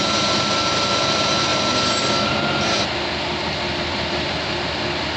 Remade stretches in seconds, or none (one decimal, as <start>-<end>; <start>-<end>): none